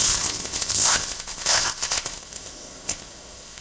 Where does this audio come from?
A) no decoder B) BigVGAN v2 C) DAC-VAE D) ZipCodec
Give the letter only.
D